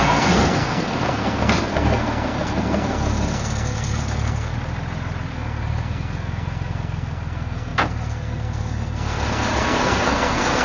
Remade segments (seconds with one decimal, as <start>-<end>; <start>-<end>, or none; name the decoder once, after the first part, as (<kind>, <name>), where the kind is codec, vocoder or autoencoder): 0.0-4.5 (codec, SNAC); 5.3-10.6